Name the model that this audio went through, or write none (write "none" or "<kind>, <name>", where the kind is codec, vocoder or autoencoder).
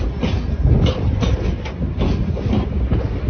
none